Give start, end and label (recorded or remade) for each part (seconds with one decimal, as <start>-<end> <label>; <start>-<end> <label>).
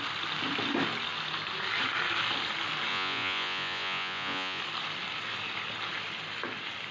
0.0-2.9 recorded; 2.9-4.6 remade; 4.6-6.9 recorded